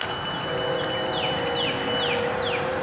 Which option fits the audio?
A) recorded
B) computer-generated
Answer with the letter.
A